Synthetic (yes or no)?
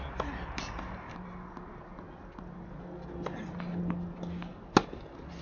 no